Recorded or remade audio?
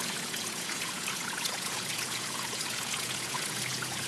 remade